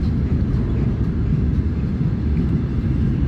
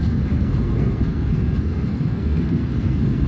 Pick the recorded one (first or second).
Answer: first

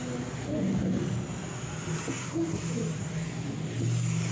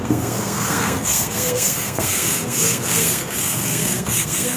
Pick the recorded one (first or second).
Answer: first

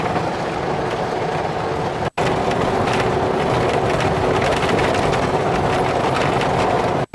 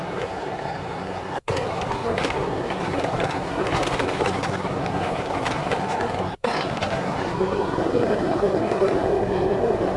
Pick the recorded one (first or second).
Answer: first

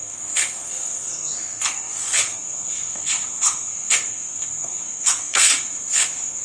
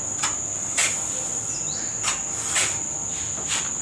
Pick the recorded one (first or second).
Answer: second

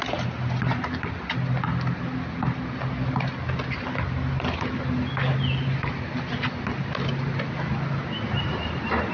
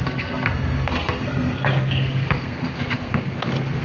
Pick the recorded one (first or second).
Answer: first